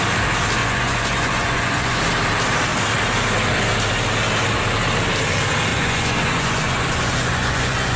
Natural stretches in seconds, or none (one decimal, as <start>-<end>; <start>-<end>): 0.0-0.6; 2.0-5.7